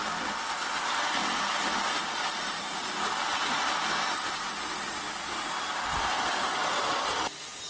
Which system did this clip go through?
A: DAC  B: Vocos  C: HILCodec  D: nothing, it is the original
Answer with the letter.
D